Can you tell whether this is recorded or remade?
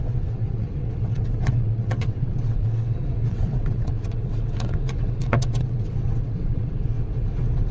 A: remade